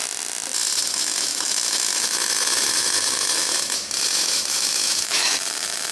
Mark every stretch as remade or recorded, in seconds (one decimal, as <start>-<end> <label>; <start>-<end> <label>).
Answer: 0.0-0.8 recorded; 0.8-5.9 remade